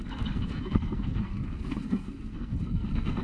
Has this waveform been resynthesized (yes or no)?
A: yes